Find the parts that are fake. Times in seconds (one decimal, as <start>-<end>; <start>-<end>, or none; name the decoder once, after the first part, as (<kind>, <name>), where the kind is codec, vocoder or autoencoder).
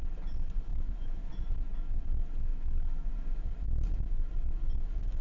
0.7-1.3 (autoencoder, DAC-VAE); 2.5-3.1